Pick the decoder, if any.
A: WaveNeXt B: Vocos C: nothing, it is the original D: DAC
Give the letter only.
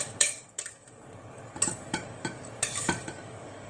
D